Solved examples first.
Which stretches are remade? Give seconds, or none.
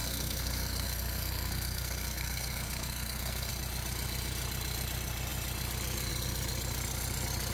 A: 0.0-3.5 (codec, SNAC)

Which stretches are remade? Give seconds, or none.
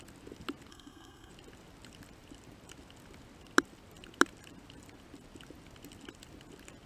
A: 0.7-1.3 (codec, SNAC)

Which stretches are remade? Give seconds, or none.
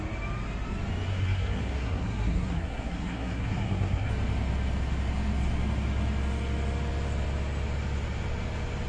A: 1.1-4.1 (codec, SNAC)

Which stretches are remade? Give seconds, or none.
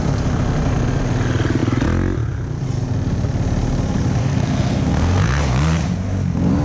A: 4.2-5.4 (codec, SNAC)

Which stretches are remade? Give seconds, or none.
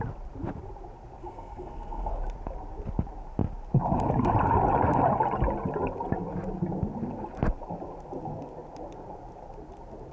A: 1.2-2.1 (codec, SNAC)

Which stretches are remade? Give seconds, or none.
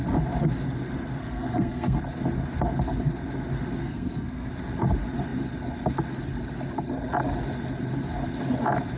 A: 1.2-2.0 (codec, SNAC); 3.8-4.5